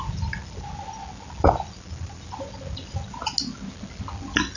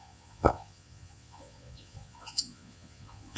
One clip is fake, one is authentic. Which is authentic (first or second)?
first